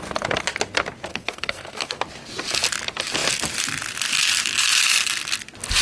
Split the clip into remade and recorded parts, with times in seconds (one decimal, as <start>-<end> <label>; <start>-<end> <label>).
0.0-1.1 recorded; 1.1-2.0 remade; 2.0-5.8 recorded